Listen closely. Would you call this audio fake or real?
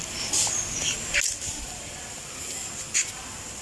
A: real